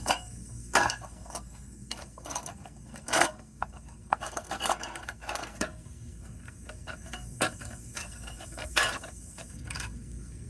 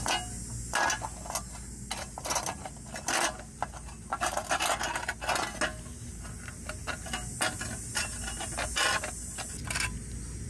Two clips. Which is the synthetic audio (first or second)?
first